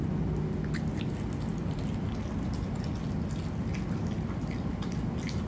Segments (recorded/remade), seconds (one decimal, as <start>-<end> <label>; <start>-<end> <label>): 0.0-5.5 recorded